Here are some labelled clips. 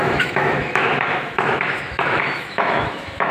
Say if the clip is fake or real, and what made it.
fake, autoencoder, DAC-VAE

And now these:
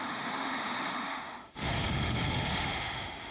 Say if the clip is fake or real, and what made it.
fake, autoencoder, DAC-VAE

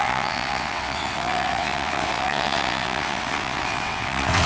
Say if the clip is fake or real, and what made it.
fake, vocoder, WaveNeXt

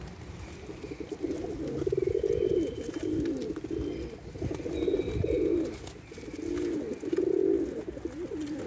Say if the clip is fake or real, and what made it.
real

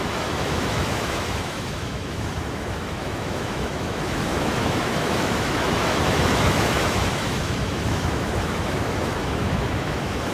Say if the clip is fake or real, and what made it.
fake, autoencoder, DAC-VAE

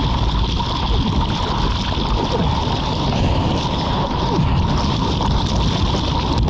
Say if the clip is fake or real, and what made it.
real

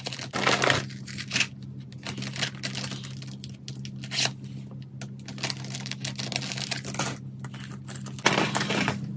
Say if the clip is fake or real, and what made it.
real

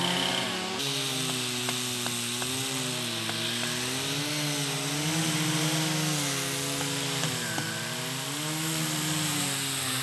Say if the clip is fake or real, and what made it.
real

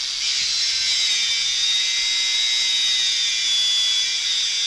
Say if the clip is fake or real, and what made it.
real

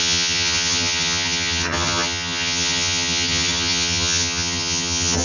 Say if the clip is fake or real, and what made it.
fake, vocoder, HiFi-GAN